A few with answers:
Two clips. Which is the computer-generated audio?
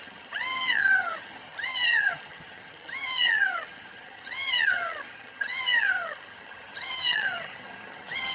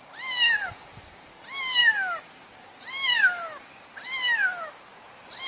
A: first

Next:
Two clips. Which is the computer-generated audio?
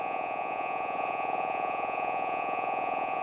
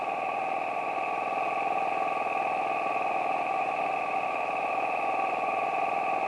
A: first